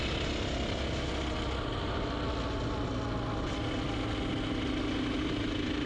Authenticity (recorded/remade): recorded